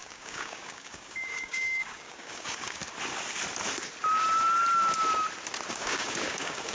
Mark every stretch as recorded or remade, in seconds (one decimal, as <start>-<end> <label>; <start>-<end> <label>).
0.0-2.8 remade; 2.8-5.7 recorded; 5.7-6.7 remade